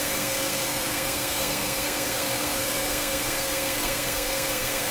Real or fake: fake